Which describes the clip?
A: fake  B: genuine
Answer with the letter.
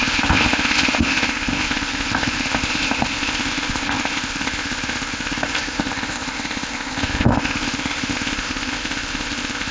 A